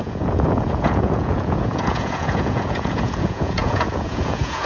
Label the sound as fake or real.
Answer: fake